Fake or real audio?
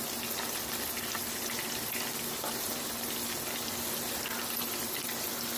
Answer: real